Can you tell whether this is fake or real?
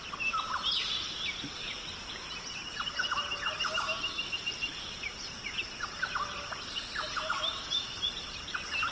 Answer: real